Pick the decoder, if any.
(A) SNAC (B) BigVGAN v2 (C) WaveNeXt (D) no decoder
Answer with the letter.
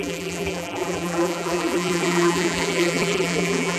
B